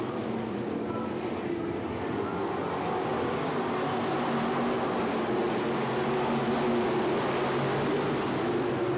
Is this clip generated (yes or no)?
no